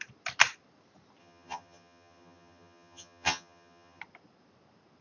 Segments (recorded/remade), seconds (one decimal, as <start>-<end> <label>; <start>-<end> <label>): 0.0-1.2 recorded; 1.2-4.0 remade; 4.0-5.0 recorded

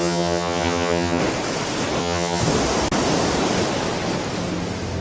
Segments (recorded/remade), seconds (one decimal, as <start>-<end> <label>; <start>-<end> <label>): 0.0-1.2 remade; 1.2-2.0 recorded; 2.0-2.4 remade; 2.4-5.0 recorded

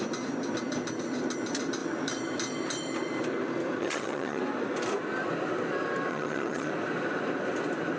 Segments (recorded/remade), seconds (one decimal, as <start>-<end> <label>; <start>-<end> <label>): 0.0-3.8 recorded; 3.8-4.4 remade; 4.4-6.1 recorded; 6.1-6.7 remade; 6.7-8.0 recorded

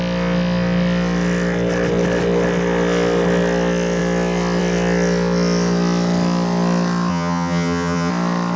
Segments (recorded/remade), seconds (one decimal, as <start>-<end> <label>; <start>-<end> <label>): 0.0-7.1 recorded; 7.1-8.1 remade; 8.1-8.6 recorded